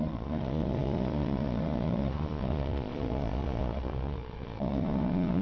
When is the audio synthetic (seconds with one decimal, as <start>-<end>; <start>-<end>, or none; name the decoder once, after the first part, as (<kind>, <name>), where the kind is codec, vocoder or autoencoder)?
0.0-5.4 (vocoder, Vocos)